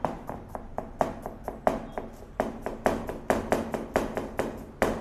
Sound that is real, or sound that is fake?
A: real